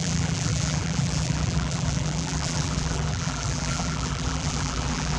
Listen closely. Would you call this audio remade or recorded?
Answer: remade